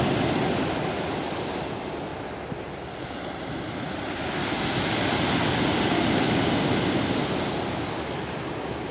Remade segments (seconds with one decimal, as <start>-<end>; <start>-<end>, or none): none

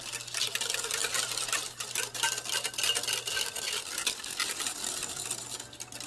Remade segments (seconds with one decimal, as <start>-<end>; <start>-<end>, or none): none